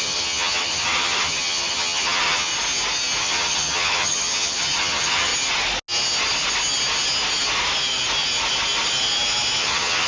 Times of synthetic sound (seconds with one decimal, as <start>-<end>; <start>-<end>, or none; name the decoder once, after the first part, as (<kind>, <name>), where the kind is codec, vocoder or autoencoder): 0.0-2.5 (vocoder, HiFi-GAN); 3.2-5.3; 9.6-10.1